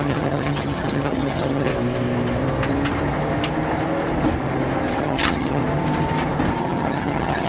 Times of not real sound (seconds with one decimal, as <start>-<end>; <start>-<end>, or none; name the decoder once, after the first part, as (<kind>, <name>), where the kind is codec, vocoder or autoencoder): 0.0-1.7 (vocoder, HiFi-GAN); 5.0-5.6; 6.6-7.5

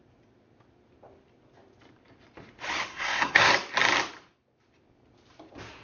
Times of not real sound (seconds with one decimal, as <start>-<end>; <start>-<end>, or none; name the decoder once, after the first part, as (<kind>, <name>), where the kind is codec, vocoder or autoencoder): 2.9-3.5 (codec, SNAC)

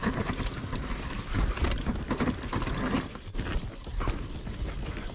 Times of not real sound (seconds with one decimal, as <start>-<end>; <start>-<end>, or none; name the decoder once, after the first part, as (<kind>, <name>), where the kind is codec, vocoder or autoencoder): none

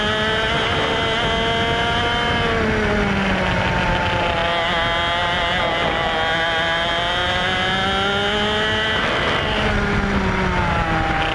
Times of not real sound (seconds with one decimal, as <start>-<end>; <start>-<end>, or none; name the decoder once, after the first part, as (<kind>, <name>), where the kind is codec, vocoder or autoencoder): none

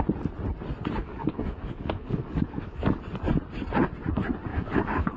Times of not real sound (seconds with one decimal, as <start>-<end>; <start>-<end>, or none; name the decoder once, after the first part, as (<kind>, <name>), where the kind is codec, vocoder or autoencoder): 1.0-3.0 (codec, DAC); 4.5-5.2

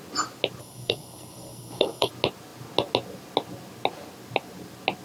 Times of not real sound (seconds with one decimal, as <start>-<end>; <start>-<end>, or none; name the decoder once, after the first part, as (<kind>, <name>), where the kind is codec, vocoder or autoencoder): 0.6-2.1 (codec, SNAC)

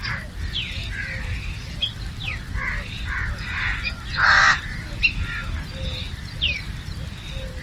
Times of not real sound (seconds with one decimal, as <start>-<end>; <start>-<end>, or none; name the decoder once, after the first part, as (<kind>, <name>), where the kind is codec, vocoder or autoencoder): 0.8-3.3 (vocoder, BigVGAN v2)

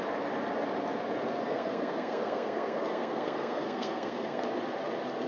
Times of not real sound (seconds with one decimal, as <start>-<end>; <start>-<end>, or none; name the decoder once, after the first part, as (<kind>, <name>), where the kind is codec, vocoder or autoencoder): 1.4-4.4 (codec, SNAC)